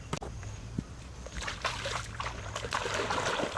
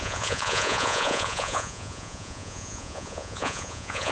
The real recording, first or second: first